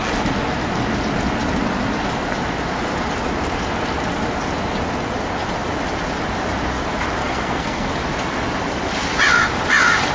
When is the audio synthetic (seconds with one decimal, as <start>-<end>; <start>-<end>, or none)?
7.2-7.9